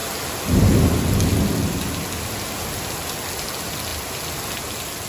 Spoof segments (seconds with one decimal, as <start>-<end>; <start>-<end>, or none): none